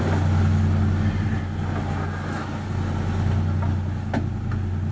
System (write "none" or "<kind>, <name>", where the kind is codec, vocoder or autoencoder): none